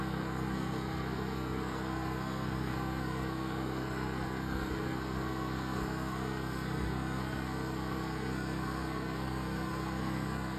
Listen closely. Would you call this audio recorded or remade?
remade